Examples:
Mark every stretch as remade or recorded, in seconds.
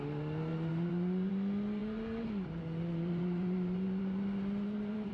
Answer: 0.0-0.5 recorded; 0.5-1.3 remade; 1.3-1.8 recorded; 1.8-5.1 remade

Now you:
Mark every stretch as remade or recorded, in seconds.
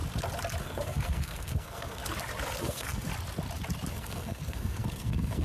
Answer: 0.0-0.6 recorded; 0.6-2.0 remade; 2.0-2.6 recorded; 2.6-3.1 remade; 3.1-3.9 recorded; 3.9-5.4 remade